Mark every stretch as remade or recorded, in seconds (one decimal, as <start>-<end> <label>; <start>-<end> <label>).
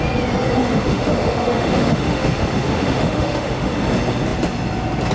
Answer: 0.0-0.6 recorded; 0.6-3.7 remade; 3.7-5.1 recorded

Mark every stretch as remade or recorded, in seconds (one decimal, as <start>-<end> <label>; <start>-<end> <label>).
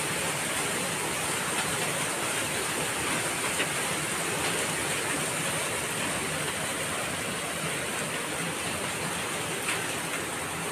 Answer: 0.0-10.7 recorded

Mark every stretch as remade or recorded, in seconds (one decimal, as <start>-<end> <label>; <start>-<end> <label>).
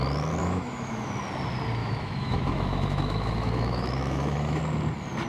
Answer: 0.0-0.4 recorded; 0.4-1.1 remade; 1.1-1.8 recorded; 1.8-4.6 remade; 4.6-5.3 recorded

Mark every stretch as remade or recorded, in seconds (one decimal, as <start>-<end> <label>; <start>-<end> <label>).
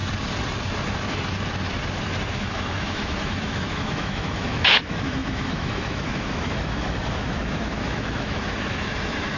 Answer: 0.0-2.3 recorded; 2.3-9.4 remade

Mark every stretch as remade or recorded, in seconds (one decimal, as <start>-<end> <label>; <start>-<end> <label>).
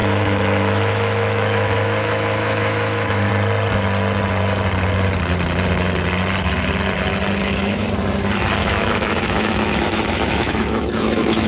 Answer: 0.0-3.3 remade; 3.3-7.4 recorded; 7.4-7.9 remade; 7.9-8.6 recorded; 8.6-11.5 remade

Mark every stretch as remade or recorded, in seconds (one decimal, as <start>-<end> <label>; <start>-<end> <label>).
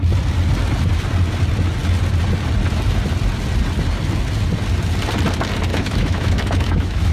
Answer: 0.0-5.7 recorded; 5.7-7.1 remade